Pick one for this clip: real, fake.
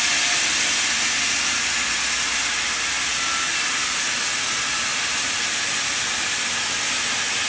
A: real